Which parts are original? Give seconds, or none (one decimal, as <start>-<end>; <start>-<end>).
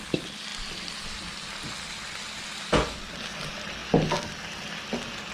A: 0.0-5.3